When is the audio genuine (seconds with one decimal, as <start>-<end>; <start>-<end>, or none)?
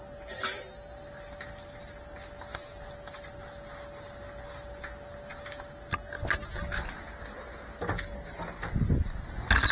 0.0-9.7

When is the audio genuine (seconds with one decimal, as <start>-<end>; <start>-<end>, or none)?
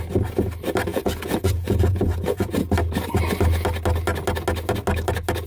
0.0-0.9; 2.5-5.5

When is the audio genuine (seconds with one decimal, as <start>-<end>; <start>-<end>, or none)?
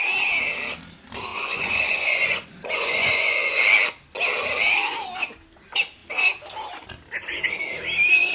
0.0-1.3; 3.6-8.3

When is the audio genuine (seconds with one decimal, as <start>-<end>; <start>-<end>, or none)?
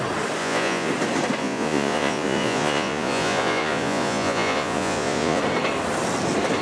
0.0-0.4; 0.9-1.4; 5.4-6.6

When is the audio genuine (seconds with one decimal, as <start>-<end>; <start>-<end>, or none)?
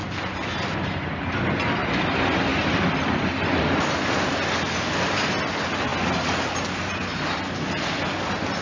0.0-8.6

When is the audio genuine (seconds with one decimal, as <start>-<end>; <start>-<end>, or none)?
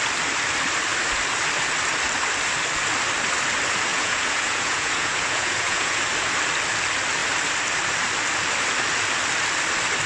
0.0-3.9; 6.0-10.1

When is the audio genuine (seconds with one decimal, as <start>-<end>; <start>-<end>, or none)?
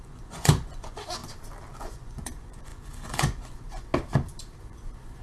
1.2-1.7; 3.9-4.6